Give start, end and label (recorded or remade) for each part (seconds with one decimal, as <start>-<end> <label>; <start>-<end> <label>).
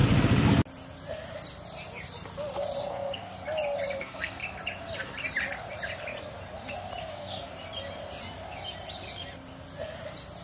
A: 0.0-2.9 recorded; 2.9-3.3 remade; 3.3-4.0 recorded; 4.0-4.4 remade; 4.4-7.0 recorded; 7.0-7.5 remade; 7.5-10.4 recorded